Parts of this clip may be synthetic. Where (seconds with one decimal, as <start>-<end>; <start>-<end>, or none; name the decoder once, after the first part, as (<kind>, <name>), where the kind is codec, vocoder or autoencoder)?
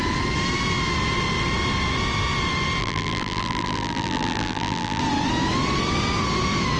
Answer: 2.8-5.0 (vocoder, BigVGAN v2)